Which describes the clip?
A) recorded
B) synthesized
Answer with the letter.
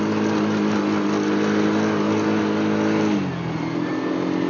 A